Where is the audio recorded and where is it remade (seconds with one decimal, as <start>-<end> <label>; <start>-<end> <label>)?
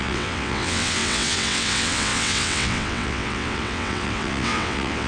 0.0-5.1 remade